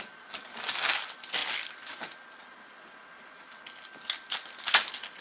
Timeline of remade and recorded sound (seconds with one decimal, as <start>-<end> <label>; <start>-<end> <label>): 0.0-5.2 recorded